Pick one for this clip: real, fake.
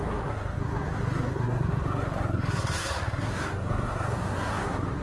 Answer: fake